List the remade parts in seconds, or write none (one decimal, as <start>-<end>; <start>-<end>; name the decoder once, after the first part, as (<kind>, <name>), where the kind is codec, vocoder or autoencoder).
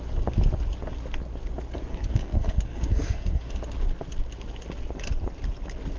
1.9-3.6 (codec, SNAC)